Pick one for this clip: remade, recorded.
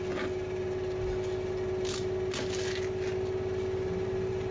recorded